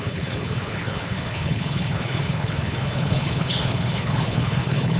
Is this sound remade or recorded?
remade